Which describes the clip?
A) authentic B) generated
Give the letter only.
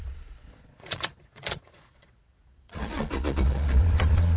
B